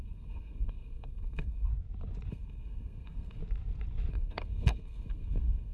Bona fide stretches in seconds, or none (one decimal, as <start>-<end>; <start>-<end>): 1.7-2.3; 3.4-4.1